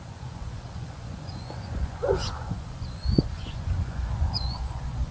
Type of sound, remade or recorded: remade